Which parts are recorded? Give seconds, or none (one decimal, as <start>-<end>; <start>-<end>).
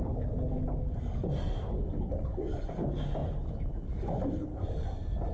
0.0-5.3